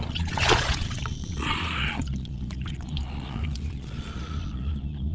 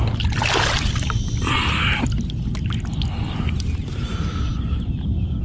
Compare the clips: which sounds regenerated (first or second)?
first